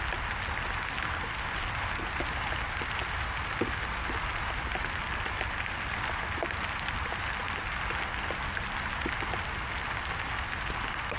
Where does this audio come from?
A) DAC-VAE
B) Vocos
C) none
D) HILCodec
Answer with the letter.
C